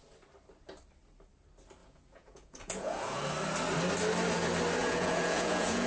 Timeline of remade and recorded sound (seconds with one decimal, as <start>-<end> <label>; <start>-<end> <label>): 0.0-1.8 recorded; 1.8-3.2 remade; 3.2-4.8 recorded; 4.8-5.9 remade